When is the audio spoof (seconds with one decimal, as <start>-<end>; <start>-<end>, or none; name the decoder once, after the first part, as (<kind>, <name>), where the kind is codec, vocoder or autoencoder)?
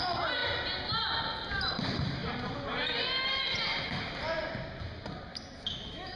5.3-6.2 (autoencoder, DAC-VAE)